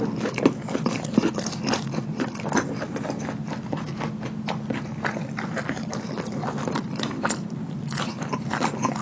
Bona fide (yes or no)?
yes